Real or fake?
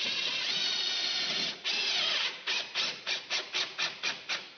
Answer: fake